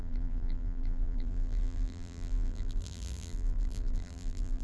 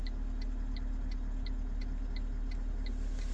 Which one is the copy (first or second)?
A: first